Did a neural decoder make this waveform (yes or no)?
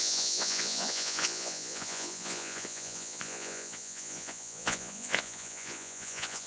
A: yes